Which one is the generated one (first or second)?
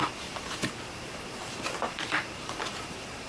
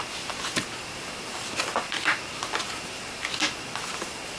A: first